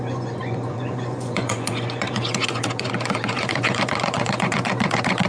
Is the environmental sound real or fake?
fake